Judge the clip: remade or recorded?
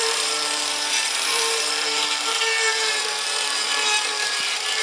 remade